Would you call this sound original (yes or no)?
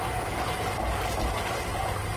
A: yes